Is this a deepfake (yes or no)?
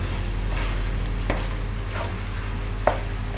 no